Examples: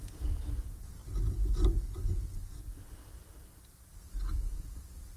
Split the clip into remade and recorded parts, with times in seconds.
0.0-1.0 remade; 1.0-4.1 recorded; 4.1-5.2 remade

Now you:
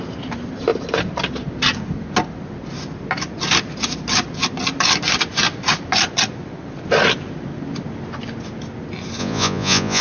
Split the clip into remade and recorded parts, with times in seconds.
0.0-9.2 recorded; 9.2-10.0 remade

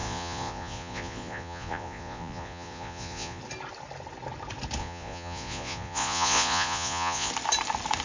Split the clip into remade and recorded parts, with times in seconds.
0.0-3.4 remade; 3.4-4.8 recorded; 4.8-7.3 remade; 7.3-8.0 recorded

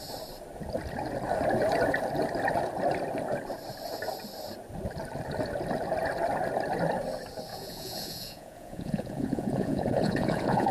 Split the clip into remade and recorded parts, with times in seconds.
0.0-7.5 recorded; 7.5-10.7 remade